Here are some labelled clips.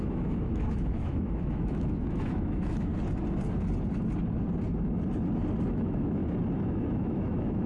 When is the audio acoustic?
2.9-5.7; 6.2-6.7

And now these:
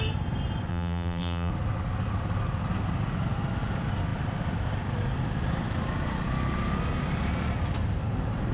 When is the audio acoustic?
0.0-0.7; 1.5-8.5

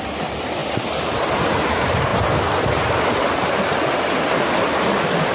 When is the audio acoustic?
0.0-0.6; 1.4-5.3

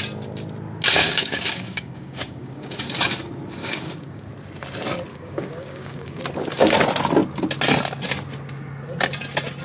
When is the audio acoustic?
0.0-1.0; 2.8-3.6; 4.3-5.1; 6.2-9.6

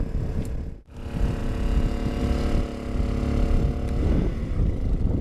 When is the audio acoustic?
0.0-1.4; 2.2-5.2

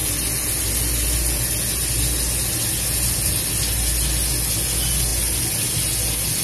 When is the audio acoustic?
0.0-6.4

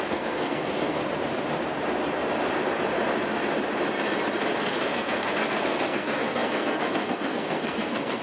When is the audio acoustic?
1.0-4.6